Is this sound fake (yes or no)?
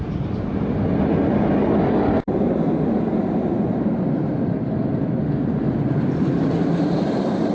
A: yes